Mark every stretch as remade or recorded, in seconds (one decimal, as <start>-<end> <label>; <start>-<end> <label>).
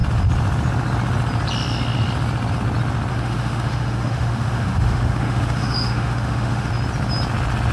0.0-3.1 recorded; 3.1-6.7 remade; 6.7-7.7 recorded